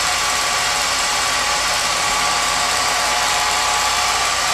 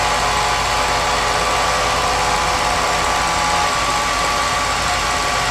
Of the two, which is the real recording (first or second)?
second